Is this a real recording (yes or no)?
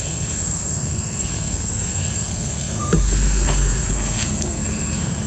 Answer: no